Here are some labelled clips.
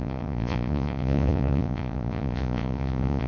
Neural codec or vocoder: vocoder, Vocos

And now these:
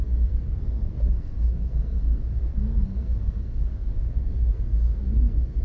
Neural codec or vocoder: codec, SNAC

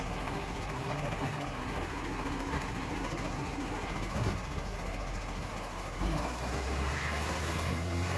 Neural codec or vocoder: codec, SNAC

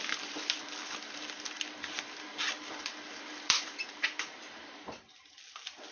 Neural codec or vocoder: vocoder, BigVGAN v2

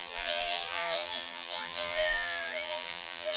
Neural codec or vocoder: vocoder, BigVGAN v2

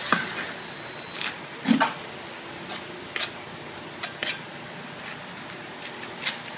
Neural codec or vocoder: none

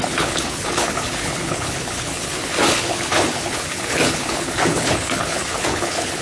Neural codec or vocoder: codec, HILCodec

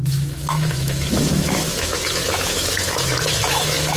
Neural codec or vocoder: autoencoder, DAC-VAE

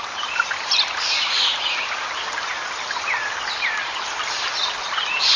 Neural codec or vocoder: none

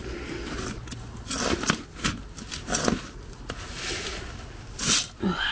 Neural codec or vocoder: none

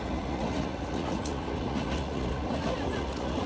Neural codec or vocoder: vocoder, Vocos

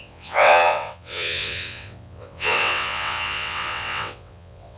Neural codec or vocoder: vocoder, WaveNeXt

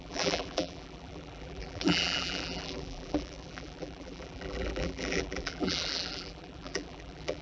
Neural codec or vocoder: vocoder, BigVGAN v2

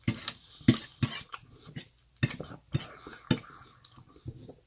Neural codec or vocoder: none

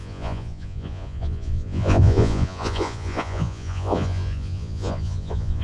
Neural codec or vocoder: vocoder, Vocos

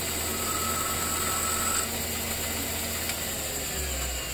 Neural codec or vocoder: none